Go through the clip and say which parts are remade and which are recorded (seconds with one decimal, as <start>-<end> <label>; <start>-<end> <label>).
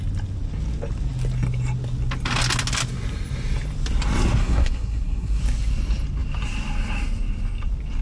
0.0-4.4 recorded; 4.4-5.4 remade; 5.4-8.0 recorded